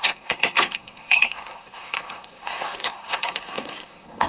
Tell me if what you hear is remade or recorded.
remade